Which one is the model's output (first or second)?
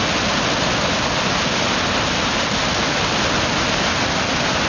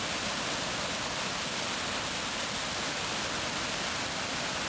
second